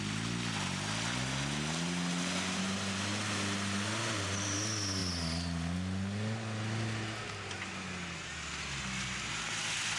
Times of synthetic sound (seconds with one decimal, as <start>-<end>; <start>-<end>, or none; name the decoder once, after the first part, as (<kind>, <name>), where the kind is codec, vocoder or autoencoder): none